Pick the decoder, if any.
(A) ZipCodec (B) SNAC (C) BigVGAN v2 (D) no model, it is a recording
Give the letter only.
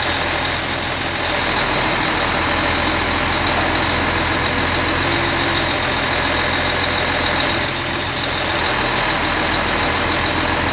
D